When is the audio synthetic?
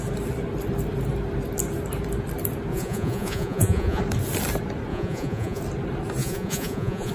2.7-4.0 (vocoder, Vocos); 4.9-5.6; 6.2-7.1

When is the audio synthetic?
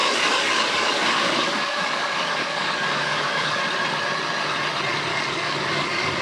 0.0-3.6 (codec, DAC); 5.1-6.2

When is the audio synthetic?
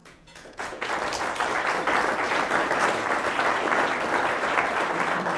0.0-0.9 (vocoder, Vocos)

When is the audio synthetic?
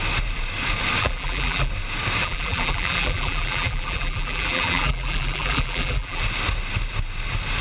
1.0-1.7 (vocoder, BigVGAN v2); 2.2-6.2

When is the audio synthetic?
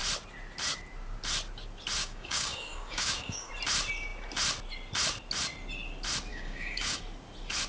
2.0-3.5 (codec, DAC); 6.3-7.0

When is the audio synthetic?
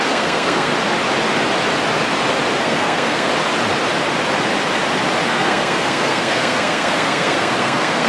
0.0-0.7 (codec, SNAC); 2.6-3.3; 5.3-8.1